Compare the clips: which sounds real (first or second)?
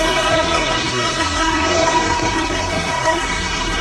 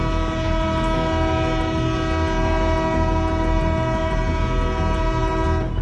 second